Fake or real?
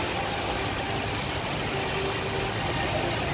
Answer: real